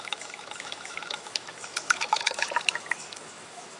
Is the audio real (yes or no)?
no